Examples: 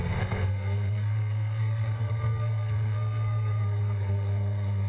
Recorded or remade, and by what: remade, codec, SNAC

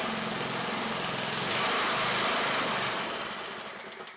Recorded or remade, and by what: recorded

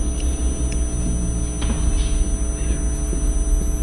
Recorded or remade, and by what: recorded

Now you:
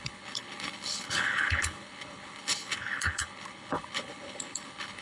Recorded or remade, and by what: remade, codec, HILCodec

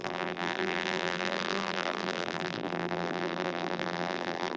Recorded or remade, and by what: remade, vocoder, BigVGAN v2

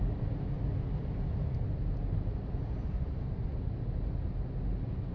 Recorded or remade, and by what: recorded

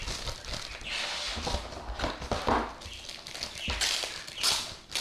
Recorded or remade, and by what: recorded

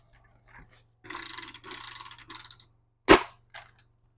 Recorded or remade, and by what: recorded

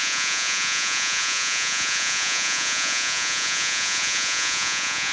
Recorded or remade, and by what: remade, vocoder, Vocos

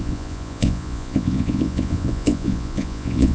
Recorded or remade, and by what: remade, vocoder, Vocos